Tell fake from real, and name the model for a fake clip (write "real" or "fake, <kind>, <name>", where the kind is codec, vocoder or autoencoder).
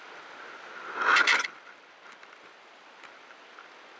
real